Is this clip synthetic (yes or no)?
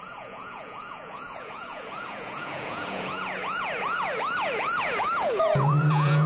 yes